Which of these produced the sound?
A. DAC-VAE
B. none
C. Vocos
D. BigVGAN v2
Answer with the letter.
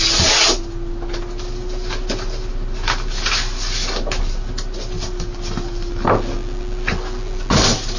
B